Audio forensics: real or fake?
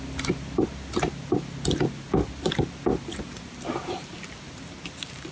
real